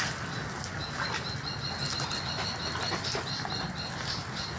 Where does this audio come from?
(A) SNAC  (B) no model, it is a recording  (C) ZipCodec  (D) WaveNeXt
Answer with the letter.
B